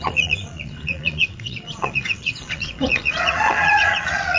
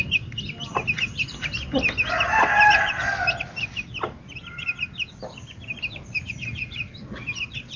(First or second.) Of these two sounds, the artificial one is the first